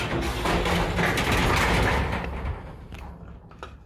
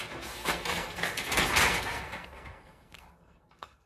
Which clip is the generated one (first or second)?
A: second